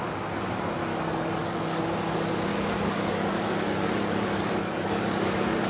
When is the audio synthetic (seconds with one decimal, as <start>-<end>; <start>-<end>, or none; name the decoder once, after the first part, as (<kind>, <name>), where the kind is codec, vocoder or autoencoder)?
0.9-1.8 (codec, DAC); 2.5-5.7